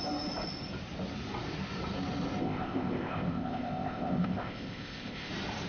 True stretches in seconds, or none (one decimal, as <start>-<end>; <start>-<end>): 0.0-2.4; 5.3-5.7